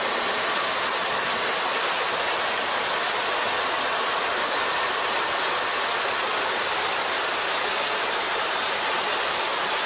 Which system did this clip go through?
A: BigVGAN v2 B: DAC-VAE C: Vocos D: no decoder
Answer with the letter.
D